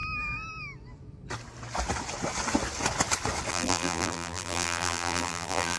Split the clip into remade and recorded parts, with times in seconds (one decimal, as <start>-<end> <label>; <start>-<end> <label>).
0.0-3.5 recorded; 3.5-5.8 remade